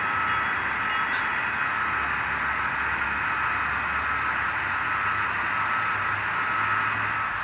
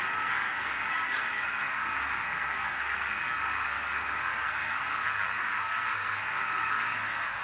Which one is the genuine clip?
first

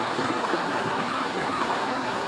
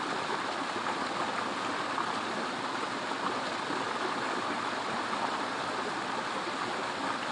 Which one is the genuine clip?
second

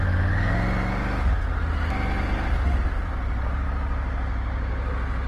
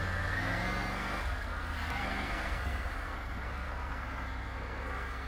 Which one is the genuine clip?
first